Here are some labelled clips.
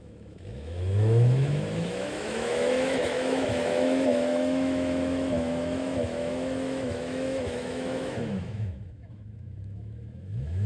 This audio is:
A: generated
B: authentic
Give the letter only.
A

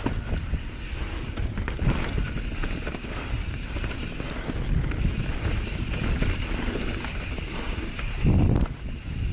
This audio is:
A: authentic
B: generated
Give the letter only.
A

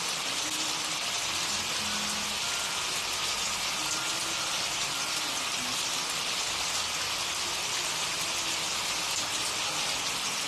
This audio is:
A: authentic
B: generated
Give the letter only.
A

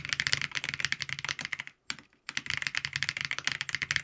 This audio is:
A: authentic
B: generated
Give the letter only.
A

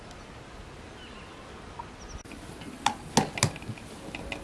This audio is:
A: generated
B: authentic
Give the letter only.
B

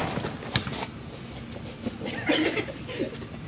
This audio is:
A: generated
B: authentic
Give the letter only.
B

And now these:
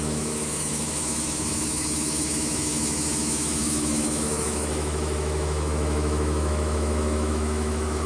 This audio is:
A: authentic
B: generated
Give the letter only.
B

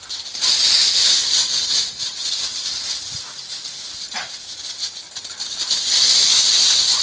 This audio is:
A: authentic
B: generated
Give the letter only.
A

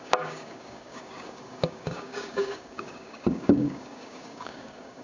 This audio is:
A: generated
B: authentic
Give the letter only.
A